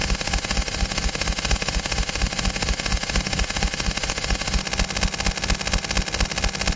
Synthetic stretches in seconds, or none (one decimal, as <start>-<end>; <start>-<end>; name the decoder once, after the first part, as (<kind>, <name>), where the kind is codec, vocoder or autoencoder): 0.0-4.6 (autoencoder, DAC-VAE)